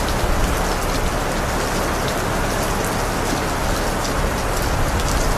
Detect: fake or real real